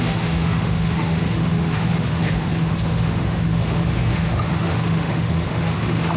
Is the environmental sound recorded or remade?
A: remade